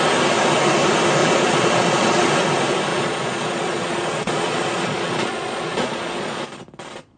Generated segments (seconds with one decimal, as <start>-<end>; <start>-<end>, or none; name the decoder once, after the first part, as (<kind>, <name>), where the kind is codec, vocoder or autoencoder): 1.2-2.3 (vocoder, Vocos); 2.9-6.4